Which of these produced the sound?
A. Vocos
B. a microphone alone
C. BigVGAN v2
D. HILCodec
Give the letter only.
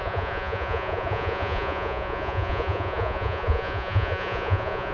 A